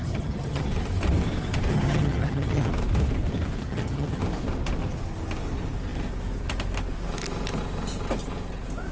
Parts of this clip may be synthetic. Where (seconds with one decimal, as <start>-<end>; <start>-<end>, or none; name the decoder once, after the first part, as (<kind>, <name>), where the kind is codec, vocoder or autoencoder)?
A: 0.0-0.7 (vocoder, HiFi-GAN); 1.7-2.7; 3.6-4.2